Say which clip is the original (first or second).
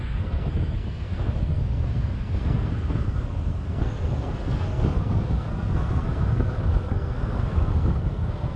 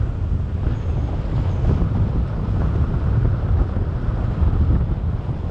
second